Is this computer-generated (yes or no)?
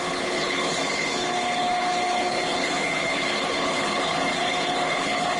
yes